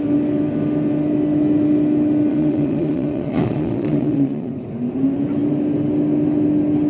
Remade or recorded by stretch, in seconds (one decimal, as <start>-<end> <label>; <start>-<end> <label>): 0.0-2.3 recorded; 2.3-4.5 remade; 4.5-6.9 recorded